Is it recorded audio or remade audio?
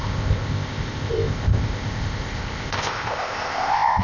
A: remade